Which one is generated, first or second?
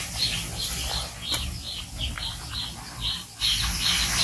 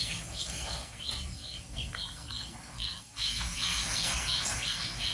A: second